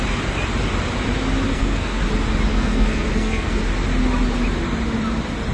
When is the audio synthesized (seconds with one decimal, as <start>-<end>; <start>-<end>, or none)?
1.5-2.0; 2.5-3.6